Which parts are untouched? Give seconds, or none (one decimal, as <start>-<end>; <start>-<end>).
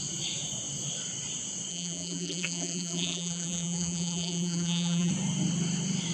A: 0.0-1.7; 5.1-6.1